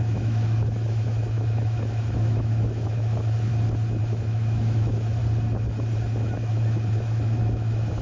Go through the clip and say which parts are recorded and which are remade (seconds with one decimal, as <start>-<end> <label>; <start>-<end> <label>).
0.0-3.5 remade; 3.5-4.0 recorded; 4.0-5.2 remade; 5.2-6.9 recorded; 6.9-8.0 remade